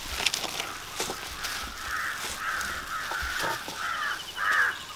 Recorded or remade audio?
recorded